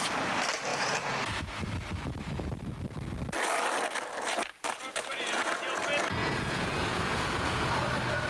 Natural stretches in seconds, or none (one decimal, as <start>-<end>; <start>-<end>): 0.0-0.7; 1.2-5.1; 5.8-6.2; 7.7-8.3